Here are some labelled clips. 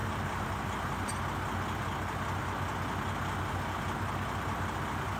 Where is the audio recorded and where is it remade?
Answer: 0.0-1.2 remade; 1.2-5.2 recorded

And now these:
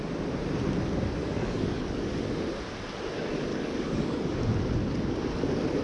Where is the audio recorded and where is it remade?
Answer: 0.0-1.2 recorded; 1.2-2.1 remade; 2.1-3.5 recorded; 3.5-4.3 remade; 4.3-5.8 recorded